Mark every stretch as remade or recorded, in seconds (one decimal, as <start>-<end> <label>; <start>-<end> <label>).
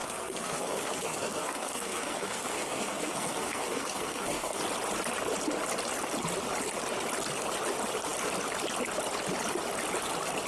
0.0-4.6 remade; 4.6-10.5 recorded